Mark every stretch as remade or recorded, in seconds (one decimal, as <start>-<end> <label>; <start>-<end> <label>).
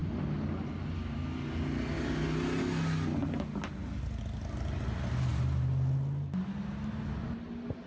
0.0-7.9 recorded